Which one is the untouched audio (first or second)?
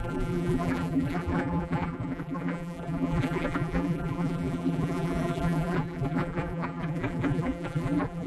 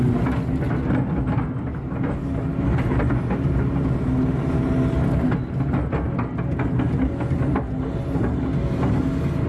second